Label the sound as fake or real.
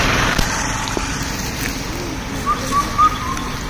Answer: real